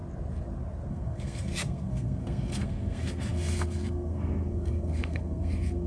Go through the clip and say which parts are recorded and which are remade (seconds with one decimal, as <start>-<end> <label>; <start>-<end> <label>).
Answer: 0.0-0.9 recorded; 0.9-5.9 remade